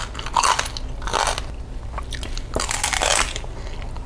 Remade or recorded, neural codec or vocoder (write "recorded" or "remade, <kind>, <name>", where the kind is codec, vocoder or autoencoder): recorded